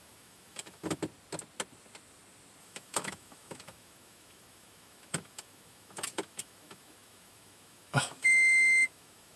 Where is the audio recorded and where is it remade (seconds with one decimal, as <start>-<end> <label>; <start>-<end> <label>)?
0.0-1.0 remade; 1.0-2.6 recorded; 2.6-9.4 remade